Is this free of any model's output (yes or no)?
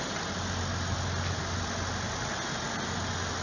yes